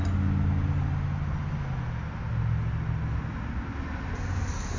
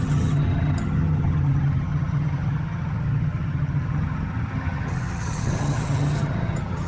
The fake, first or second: second